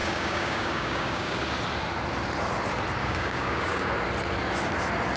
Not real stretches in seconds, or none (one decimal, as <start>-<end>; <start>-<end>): 0.0-1.4; 3.0-3.9